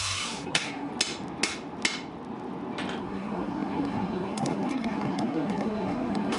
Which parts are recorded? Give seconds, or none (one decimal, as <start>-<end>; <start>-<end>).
0.9-3.0